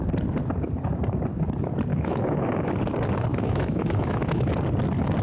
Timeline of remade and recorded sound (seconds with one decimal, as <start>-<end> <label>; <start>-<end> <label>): 0.0-1.9 recorded; 1.9-2.7 remade; 2.7-3.3 recorded; 3.3-4.5 remade; 4.5-5.2 recorded

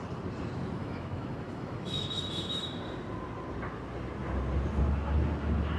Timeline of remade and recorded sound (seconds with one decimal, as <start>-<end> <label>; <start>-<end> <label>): 0.0-0.8 recorded; 0.8-2.8 remade; 2.8-5.8 recorded

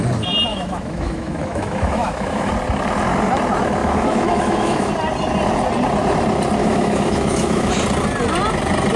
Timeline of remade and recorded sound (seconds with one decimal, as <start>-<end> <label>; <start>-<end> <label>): 0.0-0.5 recorded; 0.5-2.5 remade; 2.5-3.8 recorded; 3.8-4.9 remade; 4.9-6.6 recorded; 6.6-7.7 remade; 7.7-9.0 recorded

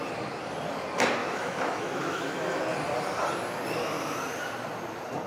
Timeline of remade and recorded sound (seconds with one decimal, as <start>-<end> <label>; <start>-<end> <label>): 0.0-1.2 recorded; 1.2-2.6 remade; 2.6-5.3 recorded